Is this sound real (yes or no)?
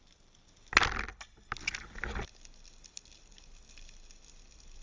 yes